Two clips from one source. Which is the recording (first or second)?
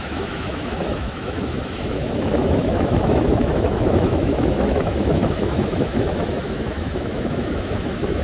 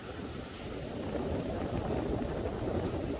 second